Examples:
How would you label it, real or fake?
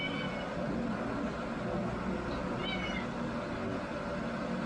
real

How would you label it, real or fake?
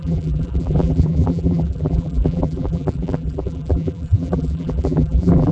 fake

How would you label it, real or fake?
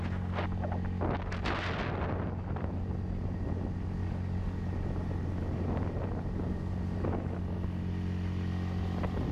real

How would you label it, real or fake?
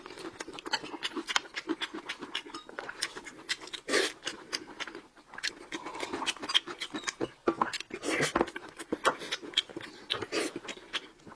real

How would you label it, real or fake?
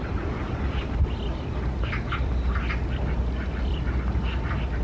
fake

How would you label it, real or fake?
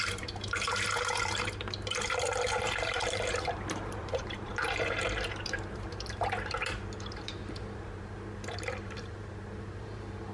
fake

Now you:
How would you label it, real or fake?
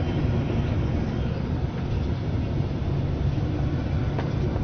real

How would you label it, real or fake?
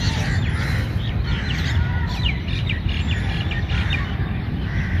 fake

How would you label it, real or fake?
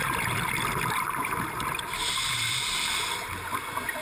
real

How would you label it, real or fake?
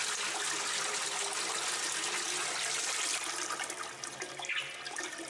real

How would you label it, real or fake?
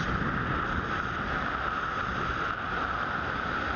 real